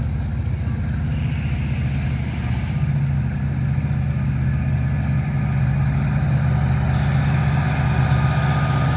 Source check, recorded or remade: recorded